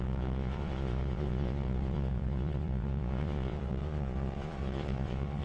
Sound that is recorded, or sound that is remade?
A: remade